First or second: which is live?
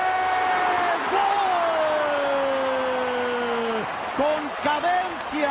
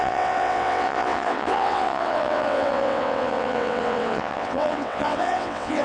first